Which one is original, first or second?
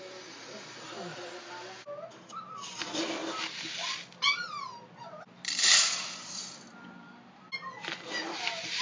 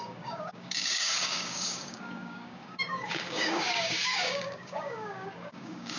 first